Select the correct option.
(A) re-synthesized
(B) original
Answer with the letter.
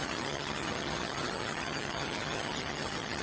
A